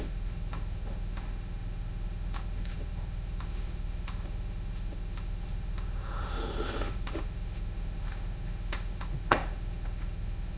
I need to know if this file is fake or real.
fake